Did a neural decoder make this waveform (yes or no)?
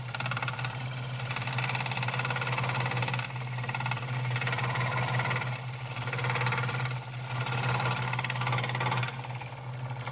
no